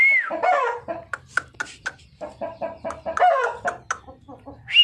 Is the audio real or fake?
real